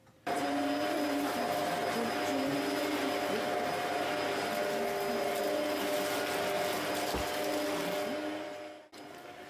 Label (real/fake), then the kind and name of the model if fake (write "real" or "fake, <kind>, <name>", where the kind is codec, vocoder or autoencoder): real